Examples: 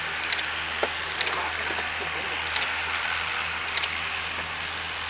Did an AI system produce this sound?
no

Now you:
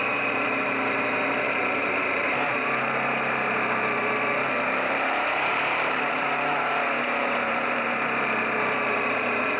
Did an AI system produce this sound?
yes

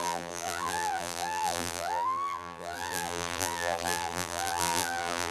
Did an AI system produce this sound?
yes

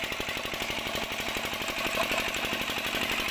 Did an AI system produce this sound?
no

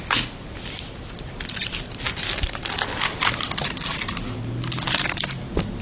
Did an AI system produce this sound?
no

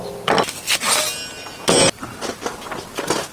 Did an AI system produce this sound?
no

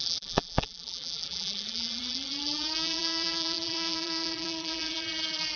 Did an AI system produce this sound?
yes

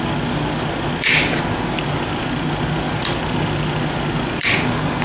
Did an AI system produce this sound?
no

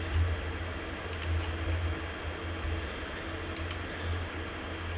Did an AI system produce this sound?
no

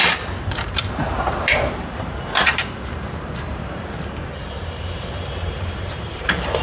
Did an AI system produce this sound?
yes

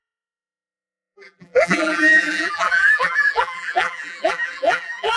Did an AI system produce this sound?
yes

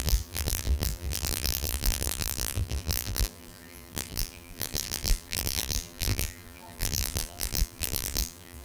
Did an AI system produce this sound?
yes